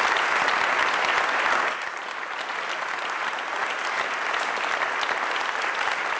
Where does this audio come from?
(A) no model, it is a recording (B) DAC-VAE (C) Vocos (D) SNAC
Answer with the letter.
A